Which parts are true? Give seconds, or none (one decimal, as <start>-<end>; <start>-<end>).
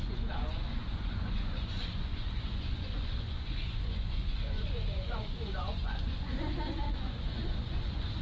none